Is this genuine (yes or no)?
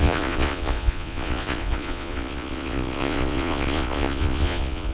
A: no